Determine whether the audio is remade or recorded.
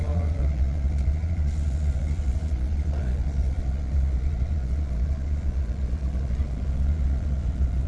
remade